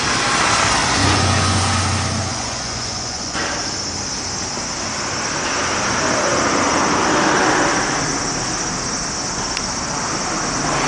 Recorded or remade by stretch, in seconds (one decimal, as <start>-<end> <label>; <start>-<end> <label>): 0.0-0.8 recorded; 0.8-1.8 remade; 1.8-2.2 recorded; 2.2-3.4 remade; 3.4-10.9 recorded